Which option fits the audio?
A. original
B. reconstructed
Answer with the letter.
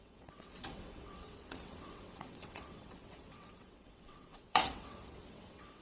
B